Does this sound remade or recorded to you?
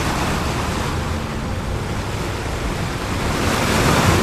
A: recorded